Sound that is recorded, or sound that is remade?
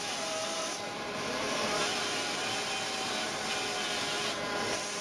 recorded